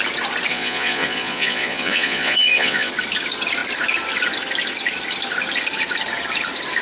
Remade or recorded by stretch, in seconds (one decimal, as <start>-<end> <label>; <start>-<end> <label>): 0.0-0.5 recorded; 0.5-2.9 remade; 2.9-6.8 recorded

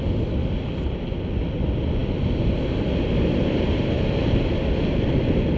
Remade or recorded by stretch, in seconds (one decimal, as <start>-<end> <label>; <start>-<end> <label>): 0.0-5.6 recorded

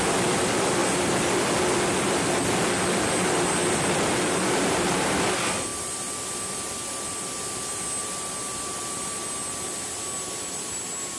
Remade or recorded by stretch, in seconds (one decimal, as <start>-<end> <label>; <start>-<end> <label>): 0.0-11.2 recorded

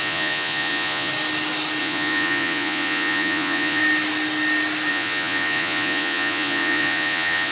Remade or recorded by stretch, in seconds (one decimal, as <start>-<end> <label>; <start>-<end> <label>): 0.0-1.1 remade; 1.1-1.8 recorded; 1.8-3.8 remade; 3.8-4.9 recorded; 4.9-7.5 remade